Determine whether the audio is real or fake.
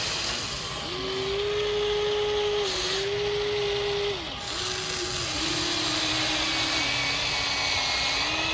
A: real